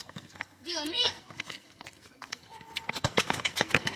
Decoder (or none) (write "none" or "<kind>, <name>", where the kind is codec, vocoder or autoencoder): codec, SNAC